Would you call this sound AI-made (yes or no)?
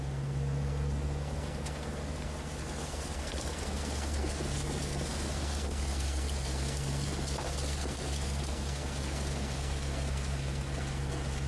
yes